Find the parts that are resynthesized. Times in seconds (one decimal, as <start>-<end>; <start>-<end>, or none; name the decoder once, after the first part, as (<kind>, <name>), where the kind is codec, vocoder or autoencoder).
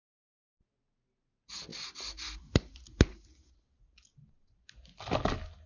none